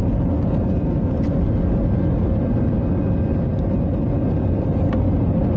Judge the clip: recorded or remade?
recorded